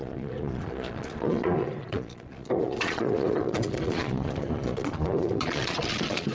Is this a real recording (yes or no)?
no